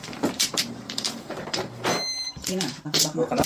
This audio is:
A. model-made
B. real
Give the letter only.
A